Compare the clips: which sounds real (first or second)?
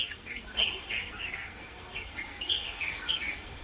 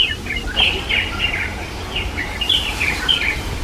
second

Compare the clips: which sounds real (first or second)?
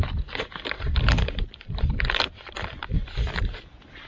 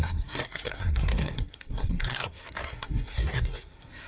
first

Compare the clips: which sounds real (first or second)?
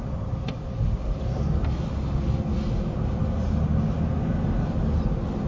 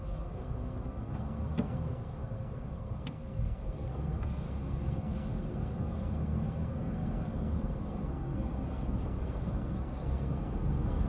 first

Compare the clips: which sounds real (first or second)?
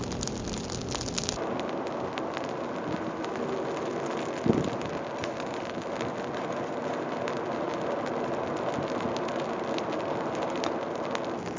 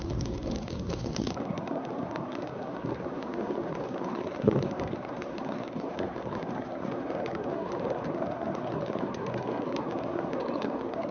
first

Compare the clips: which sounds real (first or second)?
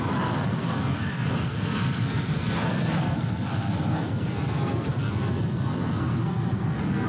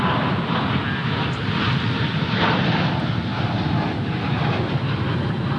second